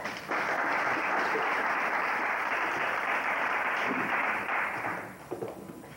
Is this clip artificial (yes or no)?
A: yes